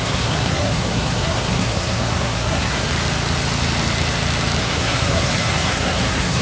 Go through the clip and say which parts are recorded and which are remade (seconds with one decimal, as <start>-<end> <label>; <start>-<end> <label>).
0.0-2.9 remade; 2.9-4.6 recorded; 4.6-6.4 remade

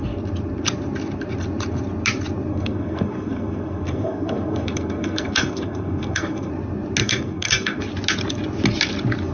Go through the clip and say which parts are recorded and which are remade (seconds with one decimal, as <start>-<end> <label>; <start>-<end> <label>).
0.0-2.5 recorded; 2.5-6.5 remade; 6.5-7.0 recorded; 7.0-7.8 remade; 7.8-9.3 recorded